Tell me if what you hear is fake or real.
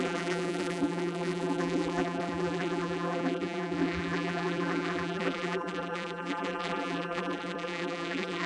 fake